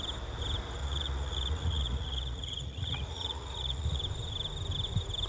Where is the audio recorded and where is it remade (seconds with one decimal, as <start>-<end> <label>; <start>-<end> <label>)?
0.0-0.8 recorded; 0.8-4.0 remade; 4.0-5.3 recorded